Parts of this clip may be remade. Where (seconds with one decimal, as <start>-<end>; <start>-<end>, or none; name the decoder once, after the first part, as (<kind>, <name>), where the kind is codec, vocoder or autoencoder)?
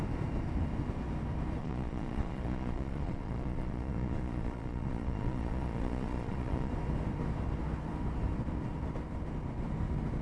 1.6-6.7 (vocoder, Vocos)